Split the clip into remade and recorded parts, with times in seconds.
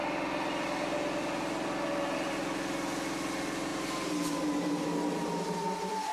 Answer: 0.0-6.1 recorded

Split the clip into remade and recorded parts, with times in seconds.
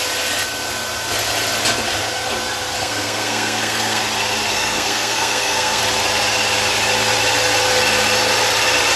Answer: 0.0-2.8 recorded; 2.8-4.0 remade; 4.0-4.5 recorded; 4.5-5.8 remade; 5.8-9.0 recorded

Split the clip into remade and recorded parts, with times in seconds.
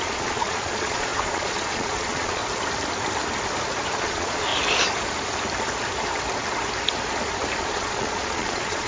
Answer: 0.0-2.4 remade; 2.4-3.9 recorded; 3.9-4.5 remade; 4.5-7.6 recorded; 7.6-8.9 remade